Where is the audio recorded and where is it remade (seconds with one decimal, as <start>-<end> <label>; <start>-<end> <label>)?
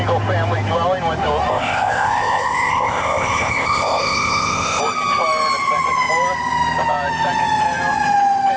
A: 0.0-1.5 recorded; 1.5-4.8 remade; 4.8-8.6 recorded